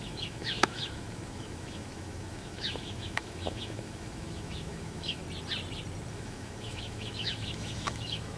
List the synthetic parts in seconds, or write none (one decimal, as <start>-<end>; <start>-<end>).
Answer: 0.0-5.2; 6.1-8.4